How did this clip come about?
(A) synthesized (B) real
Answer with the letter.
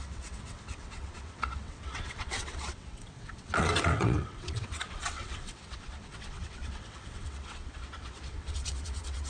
A